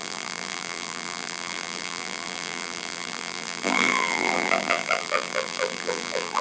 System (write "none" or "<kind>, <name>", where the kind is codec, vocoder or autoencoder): vocoder, BigVGAN v2